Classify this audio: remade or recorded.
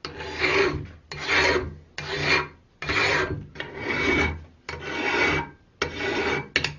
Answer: recorded